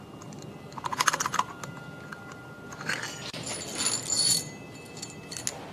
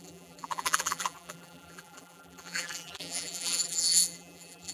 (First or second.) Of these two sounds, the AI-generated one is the second